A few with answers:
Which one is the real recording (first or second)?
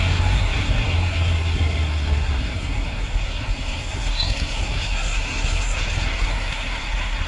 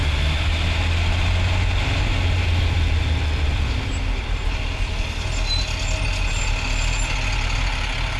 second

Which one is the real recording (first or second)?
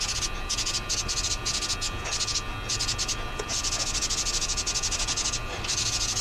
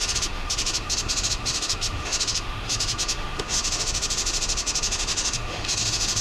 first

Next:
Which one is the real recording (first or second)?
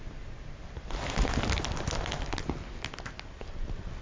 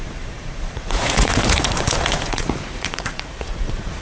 first